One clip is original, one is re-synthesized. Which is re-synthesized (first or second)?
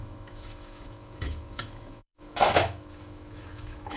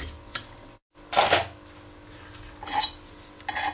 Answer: first